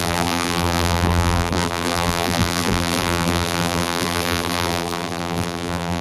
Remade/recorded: remade